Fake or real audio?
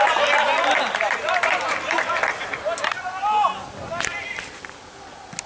real